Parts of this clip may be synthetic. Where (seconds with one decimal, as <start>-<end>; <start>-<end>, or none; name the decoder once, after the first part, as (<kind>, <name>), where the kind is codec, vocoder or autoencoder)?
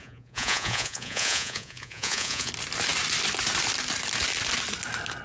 0.0-2.5 (vocoder, Vocos)